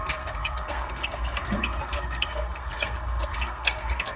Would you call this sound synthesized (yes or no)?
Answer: yes